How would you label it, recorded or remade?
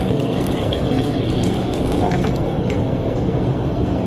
remade